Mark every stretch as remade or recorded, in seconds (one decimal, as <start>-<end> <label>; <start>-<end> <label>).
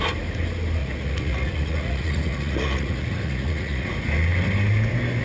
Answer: 0.0-0.8 recorded; 0.8-3.9 remade; 3.9-5.2 recorded